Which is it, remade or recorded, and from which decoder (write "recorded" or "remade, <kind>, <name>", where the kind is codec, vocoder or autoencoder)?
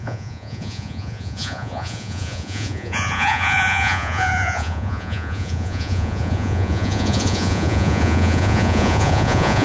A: remade, vocoder, Vocos